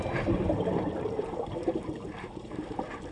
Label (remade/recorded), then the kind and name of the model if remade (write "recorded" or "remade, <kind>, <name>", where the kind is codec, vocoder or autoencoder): remade, vocoder, BigVGAN v2